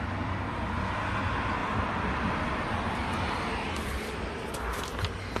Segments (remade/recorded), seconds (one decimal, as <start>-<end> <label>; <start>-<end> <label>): 0.0-1.6 recorded; 1.6-4.8 remade; 4.8-5.4 recorded